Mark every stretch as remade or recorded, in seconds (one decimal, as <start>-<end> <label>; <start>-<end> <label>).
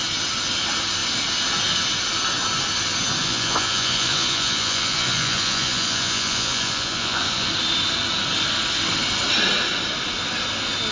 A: 0.0-3.2 recorded; 3.2-7.5 remade; 7.5-10.9 recorded